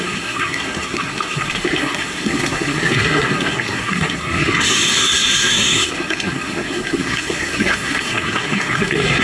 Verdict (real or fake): fake